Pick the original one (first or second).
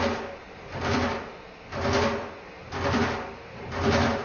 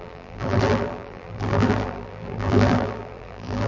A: first